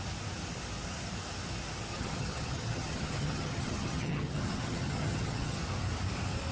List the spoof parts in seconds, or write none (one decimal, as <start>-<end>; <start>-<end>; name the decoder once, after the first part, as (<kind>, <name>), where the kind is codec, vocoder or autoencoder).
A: 1.9-5.6 (vocoder, HiFi-GAN)